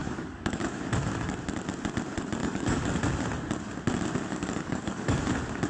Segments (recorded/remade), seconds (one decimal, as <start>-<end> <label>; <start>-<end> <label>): 0.0-0.8 remade; 0.8-2.4 recorded; 2.4-3.0 remade; 3.0-4.3 recorded; 4.3-5.2 remade; 5.2-5.7 recorded